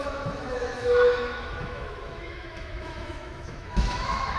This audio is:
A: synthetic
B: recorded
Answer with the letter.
A